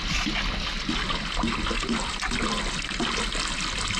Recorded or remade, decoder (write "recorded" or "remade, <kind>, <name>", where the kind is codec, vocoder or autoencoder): recorded